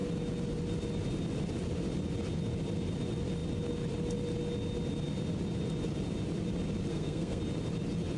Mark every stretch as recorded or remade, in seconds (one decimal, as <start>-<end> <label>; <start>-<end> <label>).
0.0-6.9 recorded; 6.9-7.4 remade; 7.4-8.2 recorded